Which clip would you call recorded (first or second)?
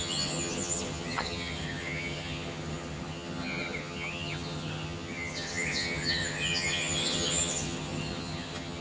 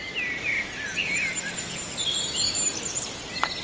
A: second